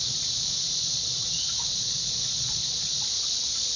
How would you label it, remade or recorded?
remade